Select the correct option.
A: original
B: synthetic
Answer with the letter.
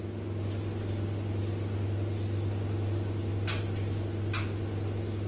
A